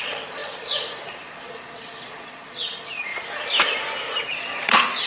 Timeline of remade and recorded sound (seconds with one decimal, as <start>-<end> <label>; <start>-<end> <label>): 0.0-3.1 remade; 3.1-4.3 recorded; 4.3-5.1 remade